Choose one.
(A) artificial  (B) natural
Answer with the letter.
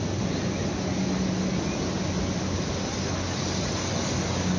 B